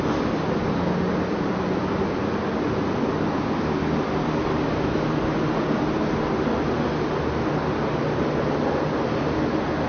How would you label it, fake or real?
real